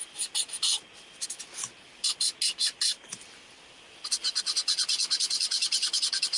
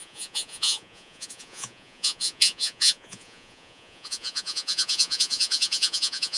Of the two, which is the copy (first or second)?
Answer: second